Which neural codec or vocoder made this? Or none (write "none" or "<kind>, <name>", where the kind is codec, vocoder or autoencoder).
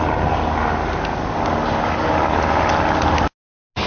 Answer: none